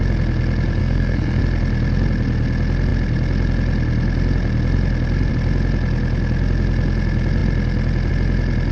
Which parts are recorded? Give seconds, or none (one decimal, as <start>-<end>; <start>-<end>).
0.0-0.8; 1.4-8.7